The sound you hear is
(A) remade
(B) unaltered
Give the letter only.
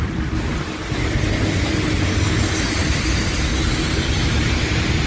B